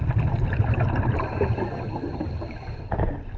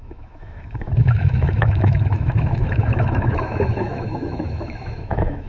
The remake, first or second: second